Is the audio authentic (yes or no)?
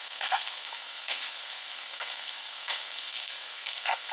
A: no